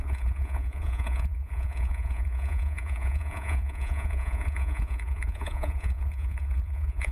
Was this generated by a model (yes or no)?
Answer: yes